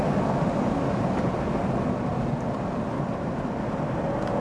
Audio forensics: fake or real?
real